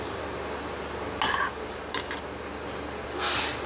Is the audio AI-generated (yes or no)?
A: no